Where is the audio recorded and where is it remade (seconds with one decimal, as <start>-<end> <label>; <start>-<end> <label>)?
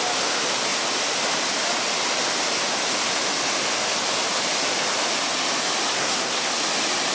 0.0-5.9 recorded; 5.9-6.5 remade; 6.5-7.1 recorded